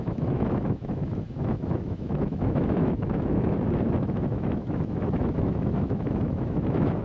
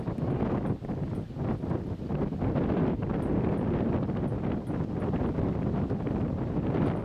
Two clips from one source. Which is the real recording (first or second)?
second